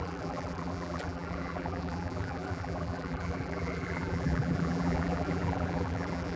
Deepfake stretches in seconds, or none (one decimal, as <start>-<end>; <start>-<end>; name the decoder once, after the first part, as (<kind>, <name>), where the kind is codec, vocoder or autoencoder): 0.0-6.4 (vocoder, BigVGAN v2)